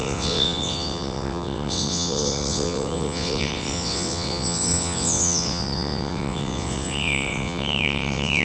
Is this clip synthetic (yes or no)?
yes